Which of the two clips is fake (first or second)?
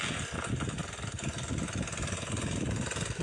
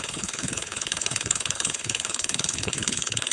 second